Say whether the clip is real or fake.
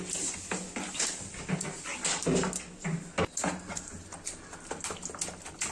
real